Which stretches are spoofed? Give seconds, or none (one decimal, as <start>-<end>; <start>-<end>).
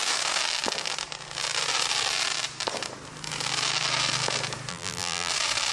4.7-5.3